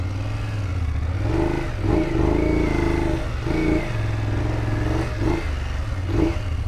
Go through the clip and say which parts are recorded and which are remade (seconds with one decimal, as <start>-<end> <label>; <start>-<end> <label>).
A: 0.0-6.7 recorded